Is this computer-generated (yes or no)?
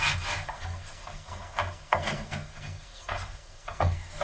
yes